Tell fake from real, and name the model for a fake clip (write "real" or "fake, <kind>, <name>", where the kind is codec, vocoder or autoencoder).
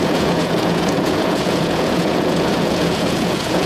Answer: fake, vocoder, Vocos